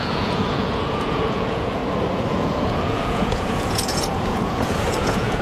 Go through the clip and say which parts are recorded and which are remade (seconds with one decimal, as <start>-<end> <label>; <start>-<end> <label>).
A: 0.0-1.8 remade; 1.8-2.3 recorded; 2.3-5.4 remade